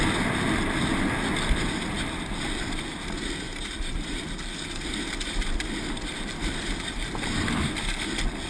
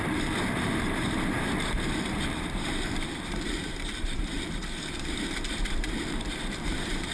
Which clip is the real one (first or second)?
first